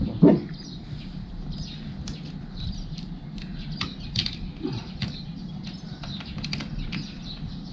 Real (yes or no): yes